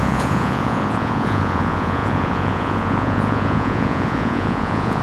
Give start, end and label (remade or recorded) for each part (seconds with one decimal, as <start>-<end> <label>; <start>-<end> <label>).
0.0-5.0 remade